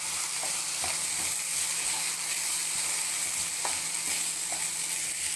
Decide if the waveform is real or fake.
real